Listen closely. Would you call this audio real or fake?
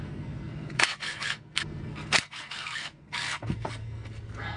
fake